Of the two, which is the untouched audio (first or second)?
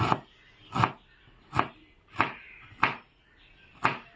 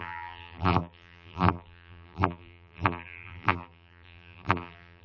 first